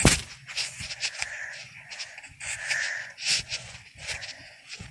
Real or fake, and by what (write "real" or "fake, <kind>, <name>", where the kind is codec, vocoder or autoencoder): fake, vocoder, Vocos